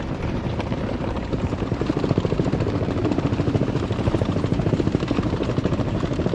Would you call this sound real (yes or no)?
no